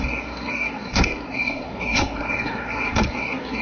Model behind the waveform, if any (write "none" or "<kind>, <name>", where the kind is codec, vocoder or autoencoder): codec, SNAC